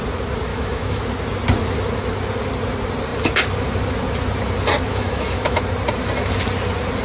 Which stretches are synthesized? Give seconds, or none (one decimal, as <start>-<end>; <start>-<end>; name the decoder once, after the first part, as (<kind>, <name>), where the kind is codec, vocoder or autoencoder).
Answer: 0.5-1.0 (autoencoder, DAC-VAE); 4.9-5.6